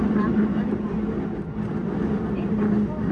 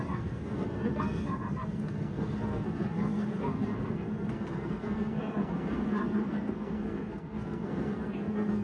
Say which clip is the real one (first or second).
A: first